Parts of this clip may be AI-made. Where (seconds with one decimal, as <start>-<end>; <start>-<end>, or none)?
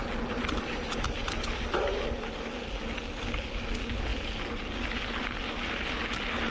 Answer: none